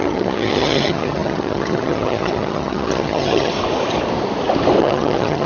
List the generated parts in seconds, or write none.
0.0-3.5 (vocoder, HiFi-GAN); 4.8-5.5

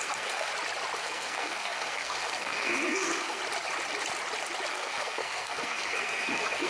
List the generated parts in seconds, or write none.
0.0-0.5 (codec, SNAC); 1.0-3.4; 4.7-6.7

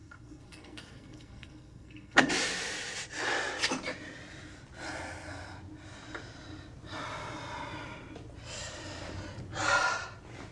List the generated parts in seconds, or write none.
0.0-2.3 (codec, SNAC)